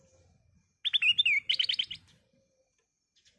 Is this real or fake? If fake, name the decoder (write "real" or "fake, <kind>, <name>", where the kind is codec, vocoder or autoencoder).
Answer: real